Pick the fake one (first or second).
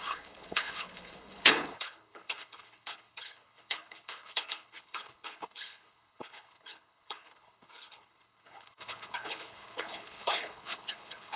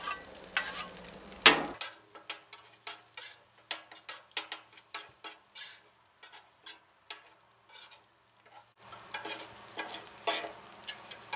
first